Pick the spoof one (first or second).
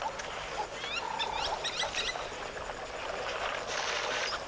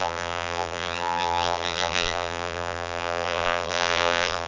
second